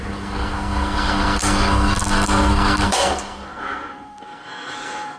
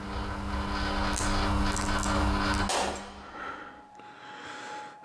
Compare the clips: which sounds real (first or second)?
second